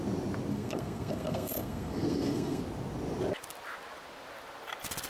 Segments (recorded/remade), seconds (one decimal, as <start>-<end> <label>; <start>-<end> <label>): 0.0-0.5 recorded; 0.5-2.6 remade; 2.6-5.1 recorded